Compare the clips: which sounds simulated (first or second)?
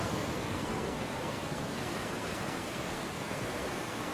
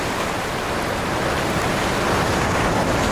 first